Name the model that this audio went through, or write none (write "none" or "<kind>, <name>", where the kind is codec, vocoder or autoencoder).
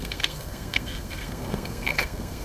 codec, SNAC